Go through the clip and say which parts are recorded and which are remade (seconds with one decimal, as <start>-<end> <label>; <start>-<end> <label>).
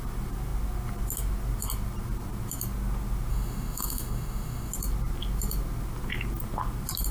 0.0-3.3 recorded; 3.3-4.7 remade; 4.7-7.1 recorded